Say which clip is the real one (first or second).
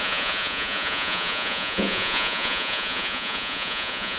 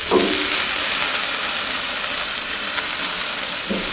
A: second